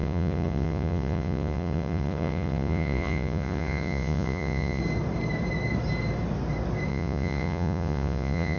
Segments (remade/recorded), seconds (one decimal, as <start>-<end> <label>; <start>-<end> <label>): 0.0-4.8 remade; 4.8-6.9 recorded; 6.9-8.6 remade